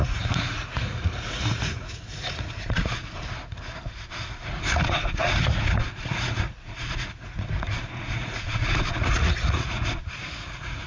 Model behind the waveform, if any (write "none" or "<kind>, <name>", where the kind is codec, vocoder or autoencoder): vocoder, Vocos